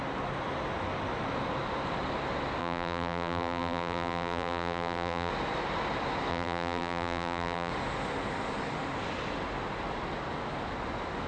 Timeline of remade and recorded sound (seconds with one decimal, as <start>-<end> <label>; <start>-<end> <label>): 0.0-2.6 recorded; 2.6-5.3 remade; 5.3-6.3 recorded; 6.3-7.7 remade; 7.7-11.3 recorded